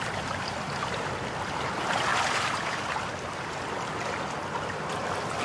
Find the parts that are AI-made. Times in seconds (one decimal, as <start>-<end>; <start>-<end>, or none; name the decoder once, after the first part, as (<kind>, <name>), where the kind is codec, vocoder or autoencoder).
none